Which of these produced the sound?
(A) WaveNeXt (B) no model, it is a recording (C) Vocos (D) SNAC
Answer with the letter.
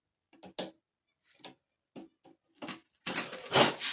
B